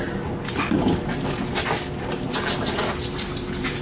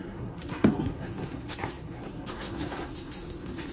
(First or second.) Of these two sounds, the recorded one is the first